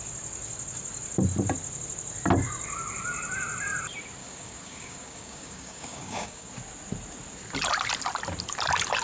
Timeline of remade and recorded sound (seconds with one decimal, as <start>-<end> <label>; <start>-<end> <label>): 0.0-4.2 recorded; 4.2-6.5 remade; 6.5-9.0 recorded